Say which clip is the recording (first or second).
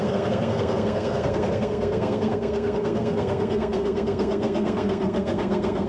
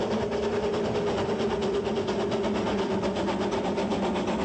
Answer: second